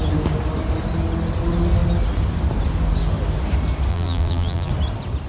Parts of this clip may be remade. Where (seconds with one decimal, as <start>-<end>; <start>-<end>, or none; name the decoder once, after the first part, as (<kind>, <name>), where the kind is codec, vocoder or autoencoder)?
3.9-4.7 (vocoder, BigVGAN v2)